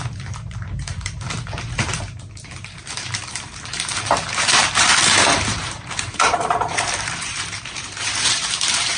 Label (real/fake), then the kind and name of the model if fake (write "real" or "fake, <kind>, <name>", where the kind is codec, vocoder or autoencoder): fake, vocoder, BigVGAN v2